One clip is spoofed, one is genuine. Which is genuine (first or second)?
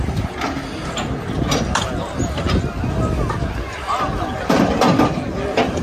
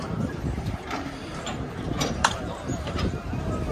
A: first